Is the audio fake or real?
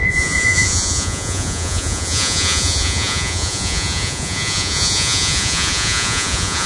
fake